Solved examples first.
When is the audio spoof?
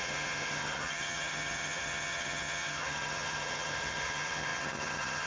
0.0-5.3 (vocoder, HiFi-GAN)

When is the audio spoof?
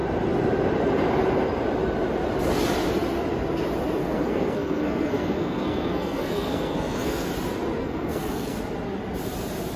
4.0-7.3 (codec, SNAC); 7.8-8.6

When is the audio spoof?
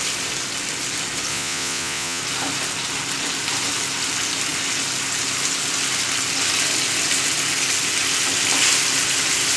1.3-2.2 (vocoder, Vocos)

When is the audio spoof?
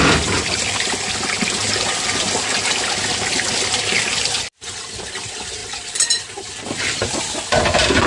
0.0-1.6 (vocoder, BigVGAN v2); 4.7-8.1